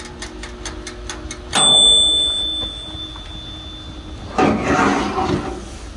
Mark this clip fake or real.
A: real